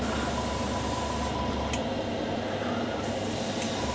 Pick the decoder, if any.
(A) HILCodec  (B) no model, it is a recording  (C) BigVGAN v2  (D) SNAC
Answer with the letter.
B